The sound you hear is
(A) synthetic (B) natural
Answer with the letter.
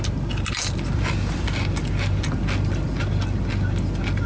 B